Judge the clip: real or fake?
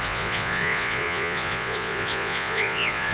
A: fake